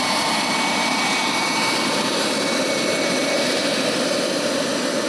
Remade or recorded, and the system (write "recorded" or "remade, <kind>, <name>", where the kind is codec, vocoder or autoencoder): remade, vocoder, BigVGAN v2